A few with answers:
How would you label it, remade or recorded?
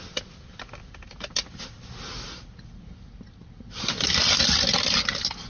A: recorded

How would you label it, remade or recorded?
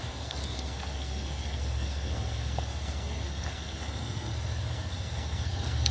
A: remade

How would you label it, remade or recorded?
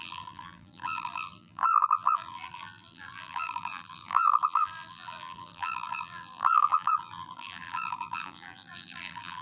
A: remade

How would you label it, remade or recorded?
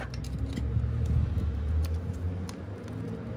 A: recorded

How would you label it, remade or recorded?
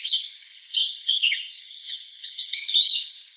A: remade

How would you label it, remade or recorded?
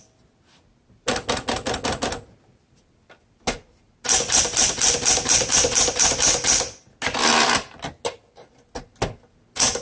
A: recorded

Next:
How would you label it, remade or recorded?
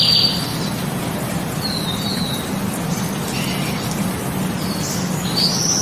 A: recorded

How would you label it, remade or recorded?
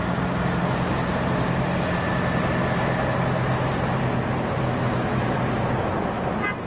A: recorded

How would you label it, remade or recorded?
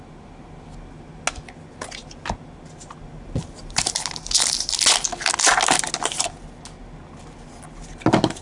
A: recorded